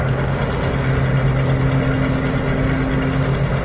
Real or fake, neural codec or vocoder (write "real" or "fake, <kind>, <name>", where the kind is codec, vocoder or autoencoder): real